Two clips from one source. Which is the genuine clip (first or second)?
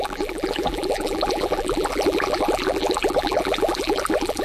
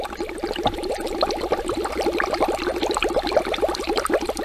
second